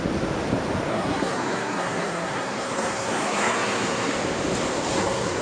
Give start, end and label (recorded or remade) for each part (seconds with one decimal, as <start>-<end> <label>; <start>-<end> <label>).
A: 0.0-0.9 recorded; 0.9-4.1 remade; 4.1-4.9 recorded; 4.9-5.4 remade